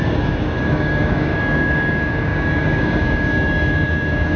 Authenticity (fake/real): fake